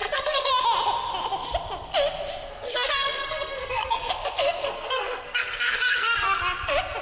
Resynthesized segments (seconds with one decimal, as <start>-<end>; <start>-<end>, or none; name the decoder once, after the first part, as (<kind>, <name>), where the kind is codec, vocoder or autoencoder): 0.0-0.5 (codec, SNAC); 2.5-6.4